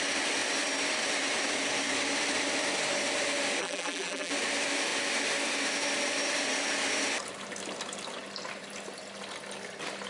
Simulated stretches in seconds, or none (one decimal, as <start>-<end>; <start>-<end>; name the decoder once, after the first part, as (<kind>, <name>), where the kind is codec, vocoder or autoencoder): 3.6-4.3 (vocoder, BigVGAN v2)

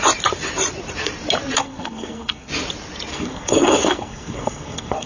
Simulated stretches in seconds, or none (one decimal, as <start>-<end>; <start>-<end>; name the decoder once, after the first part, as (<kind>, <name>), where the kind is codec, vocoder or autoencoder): 1.6-2.5 (codec, SNAC); 3.1-5.1

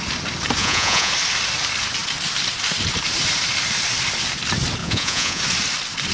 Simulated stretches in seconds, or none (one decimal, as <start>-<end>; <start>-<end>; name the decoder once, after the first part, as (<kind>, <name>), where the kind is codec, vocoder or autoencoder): 0.6-1.1 (vocoder, Vocos); 4.8-5.4

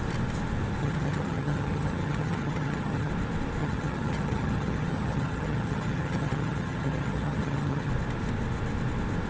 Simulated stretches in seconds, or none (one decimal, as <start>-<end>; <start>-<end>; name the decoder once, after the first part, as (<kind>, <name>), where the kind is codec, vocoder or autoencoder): 0.8-3.1 (vocoder, HiFi-GAN); 3.6-7.9

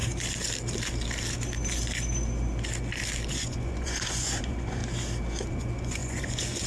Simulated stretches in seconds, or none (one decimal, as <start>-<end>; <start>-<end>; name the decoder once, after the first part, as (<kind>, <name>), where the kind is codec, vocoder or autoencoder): 3.3-4.8 (vocoder, Vocos); 5.5-6.7

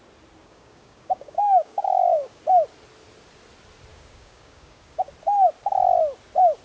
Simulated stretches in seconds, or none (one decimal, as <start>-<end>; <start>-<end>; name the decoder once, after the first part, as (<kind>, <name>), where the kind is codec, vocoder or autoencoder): 0.4-2.4 (codec, DAC); 3.9-5.1

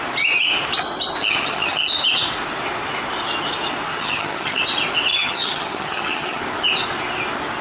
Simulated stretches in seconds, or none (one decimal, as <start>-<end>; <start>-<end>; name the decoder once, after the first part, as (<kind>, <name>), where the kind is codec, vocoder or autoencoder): 1.2-1.9 (vocoder, HiFi-GAN); 3.9-4.6; 5.1-6.4

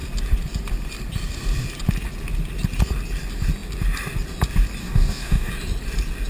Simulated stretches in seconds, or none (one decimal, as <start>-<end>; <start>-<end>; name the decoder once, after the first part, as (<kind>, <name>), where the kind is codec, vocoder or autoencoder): 4.8-5.5 (codec, DAC)